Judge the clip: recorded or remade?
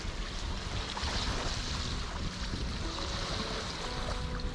recorded